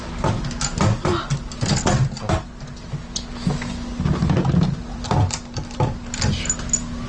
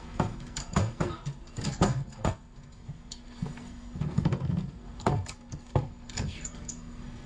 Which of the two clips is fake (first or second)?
second